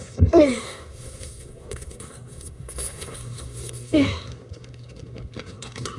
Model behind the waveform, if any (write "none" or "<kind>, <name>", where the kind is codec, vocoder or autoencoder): codec, SNAC